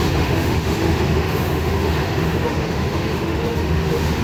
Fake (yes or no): yes